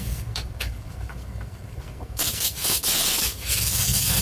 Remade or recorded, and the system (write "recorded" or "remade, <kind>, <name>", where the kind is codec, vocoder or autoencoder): remade, codec, SNAC